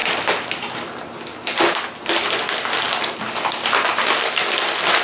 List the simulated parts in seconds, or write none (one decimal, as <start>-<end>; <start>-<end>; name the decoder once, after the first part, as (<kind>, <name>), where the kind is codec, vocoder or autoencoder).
none